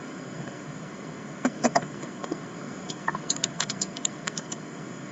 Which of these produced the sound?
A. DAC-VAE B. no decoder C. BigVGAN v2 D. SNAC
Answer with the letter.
D